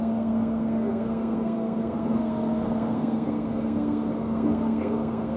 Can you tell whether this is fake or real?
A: fake